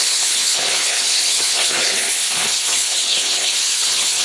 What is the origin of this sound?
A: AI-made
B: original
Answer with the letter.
A